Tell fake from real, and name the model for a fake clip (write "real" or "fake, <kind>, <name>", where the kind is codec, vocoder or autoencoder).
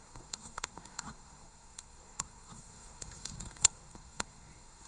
fake, codec, SNAC